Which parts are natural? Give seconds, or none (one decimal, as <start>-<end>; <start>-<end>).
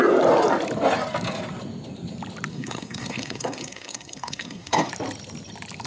0.0-2.5; 4.9-5.9